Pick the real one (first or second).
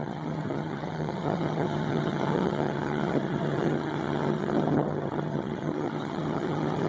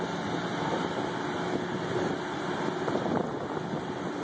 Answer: second